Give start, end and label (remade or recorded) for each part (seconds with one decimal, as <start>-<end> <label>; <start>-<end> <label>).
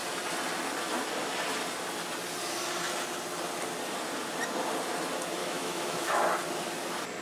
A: 0.0-5.4 recorded; 5.4-6.2 remade; 6.2-7.2 recorded